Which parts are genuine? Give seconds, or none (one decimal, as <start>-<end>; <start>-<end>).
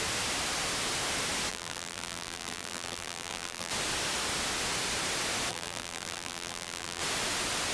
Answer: 0.0-1.5; 3.7-5.5; 7.0-7.7